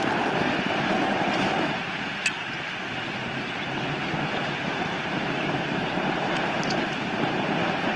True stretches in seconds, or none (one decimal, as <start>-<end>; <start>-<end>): 0.0-3.2; 7.6-8.0